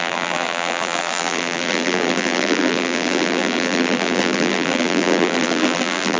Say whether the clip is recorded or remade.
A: remade